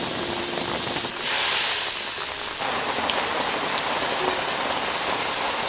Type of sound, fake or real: real